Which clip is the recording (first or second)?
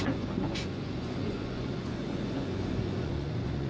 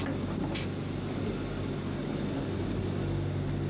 second